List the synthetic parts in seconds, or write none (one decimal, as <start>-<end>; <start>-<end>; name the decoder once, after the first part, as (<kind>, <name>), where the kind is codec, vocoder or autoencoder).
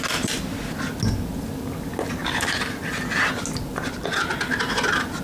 2.2-2.8 (vocoder, BigVGAN v2)